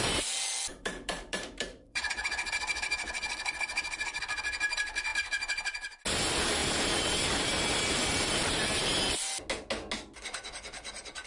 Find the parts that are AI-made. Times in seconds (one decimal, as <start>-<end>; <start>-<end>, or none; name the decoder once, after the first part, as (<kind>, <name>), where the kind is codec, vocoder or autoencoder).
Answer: 0.7-2.6 (vocoder, BigVGAN v2); 6.6-9.0

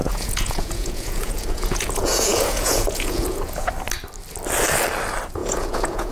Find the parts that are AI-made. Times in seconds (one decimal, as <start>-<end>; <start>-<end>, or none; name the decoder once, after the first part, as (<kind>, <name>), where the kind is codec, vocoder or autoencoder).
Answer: 0.0-3.7 (vocoder, Vocos); 5.4-6.1

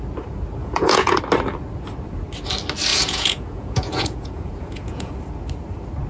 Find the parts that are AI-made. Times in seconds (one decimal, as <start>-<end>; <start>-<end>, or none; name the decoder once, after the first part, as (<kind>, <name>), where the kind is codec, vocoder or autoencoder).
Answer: 0.6-1.2 (vocoder, Vocos); 2.9-5.1